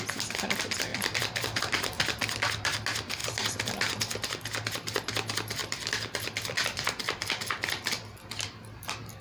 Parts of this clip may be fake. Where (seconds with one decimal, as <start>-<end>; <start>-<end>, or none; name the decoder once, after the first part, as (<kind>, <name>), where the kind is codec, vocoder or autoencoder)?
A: 0.9-1.6 (vocoder, BigVGAN v2); 3.2-4.0; 5.6-7.4